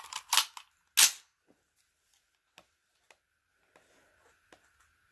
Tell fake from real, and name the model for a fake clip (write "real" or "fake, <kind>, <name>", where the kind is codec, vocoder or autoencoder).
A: real